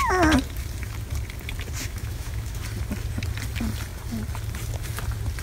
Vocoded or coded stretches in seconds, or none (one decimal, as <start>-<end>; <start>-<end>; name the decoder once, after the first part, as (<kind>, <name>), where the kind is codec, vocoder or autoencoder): 1.8-2.6 (autoencoder, DAC-VAE)